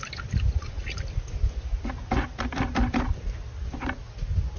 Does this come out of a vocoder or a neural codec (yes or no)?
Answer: no